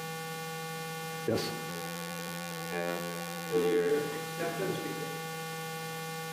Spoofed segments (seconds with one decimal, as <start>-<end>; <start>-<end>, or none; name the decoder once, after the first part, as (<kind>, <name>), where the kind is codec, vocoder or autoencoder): 1.7-3.9 (vocoder, BigVGAN v2)